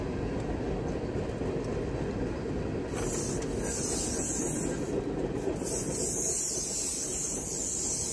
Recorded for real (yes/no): yes